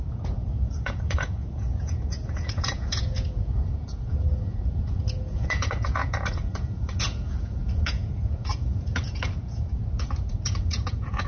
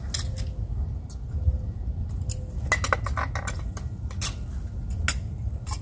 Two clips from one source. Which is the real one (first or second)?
second